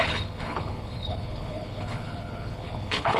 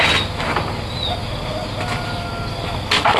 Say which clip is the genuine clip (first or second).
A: second